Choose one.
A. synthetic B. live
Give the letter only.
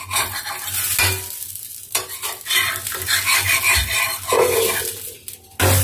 B